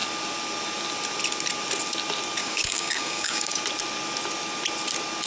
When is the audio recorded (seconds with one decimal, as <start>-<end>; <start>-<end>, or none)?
0.0-2.4; 3.6-5.3